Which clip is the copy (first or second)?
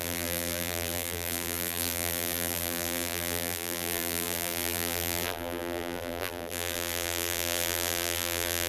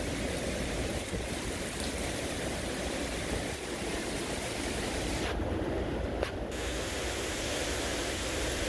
first